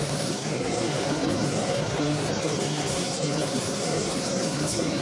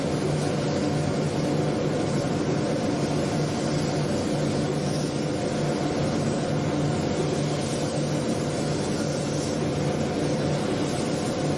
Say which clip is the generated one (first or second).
first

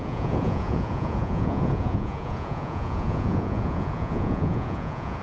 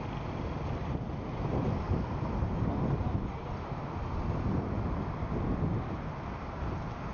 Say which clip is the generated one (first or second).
first